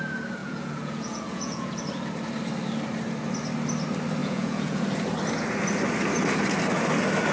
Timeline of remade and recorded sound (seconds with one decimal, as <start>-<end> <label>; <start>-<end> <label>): 0.0-0.4 recorded; 0.4-1.8 remade; 1.8-4.2 recorded; 4.2-4.8 remade; 4.8-7.3 recorded